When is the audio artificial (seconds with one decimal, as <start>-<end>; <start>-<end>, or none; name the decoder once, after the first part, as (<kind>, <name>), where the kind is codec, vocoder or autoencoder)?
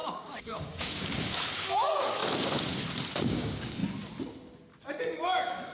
0.0-2.2 (codec, DAC); 3.2-3.8; 5.0-5.7